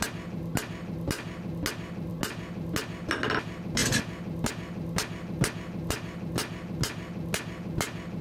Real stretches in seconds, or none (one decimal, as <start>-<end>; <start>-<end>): 0.0-8.2